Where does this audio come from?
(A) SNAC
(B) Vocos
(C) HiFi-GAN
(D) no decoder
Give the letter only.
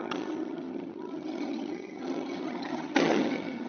C